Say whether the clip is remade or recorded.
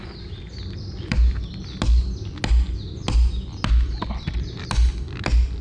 recorded